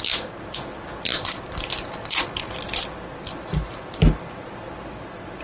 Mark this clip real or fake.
real